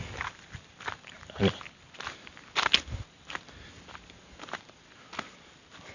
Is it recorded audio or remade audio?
recorded